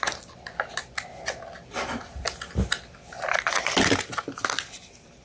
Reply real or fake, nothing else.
real